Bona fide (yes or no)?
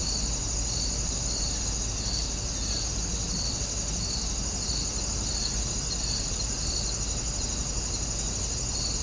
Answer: yes